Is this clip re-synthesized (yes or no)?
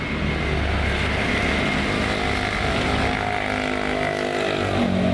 no